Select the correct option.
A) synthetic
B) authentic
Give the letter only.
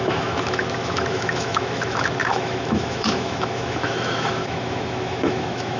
A